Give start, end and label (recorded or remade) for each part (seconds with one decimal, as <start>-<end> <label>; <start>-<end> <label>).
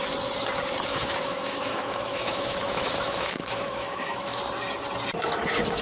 0.0-0.9 recorded; 0.9-4.4 remade; 4.4-5.8 recorded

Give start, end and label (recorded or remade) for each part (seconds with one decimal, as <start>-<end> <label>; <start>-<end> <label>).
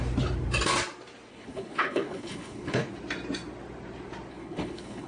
0.0-1.3 recorded; 1.3-2.9 remade; 2.9-4.3 recorded; 4.3-5.1 remade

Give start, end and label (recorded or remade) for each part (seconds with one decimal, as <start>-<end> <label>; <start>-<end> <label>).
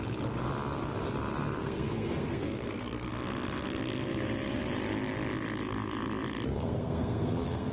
0.0-1.6 recorded; 1.6-3.1 remade; 3.1-6.5 recorded; 6.5-7.7 remade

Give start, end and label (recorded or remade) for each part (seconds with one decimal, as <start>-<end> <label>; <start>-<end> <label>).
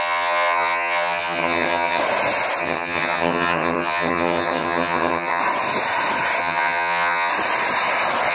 0.0-2.0 remade; 2.0-2.6 recorded; 2.6-5.4 remade; 5.4-6.4 recorded; 6.4-7.3 remade; 7.3-8.3 recorded